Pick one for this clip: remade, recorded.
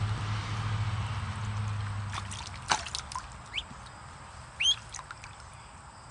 recorded